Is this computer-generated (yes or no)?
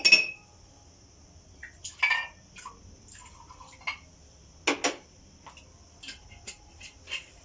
no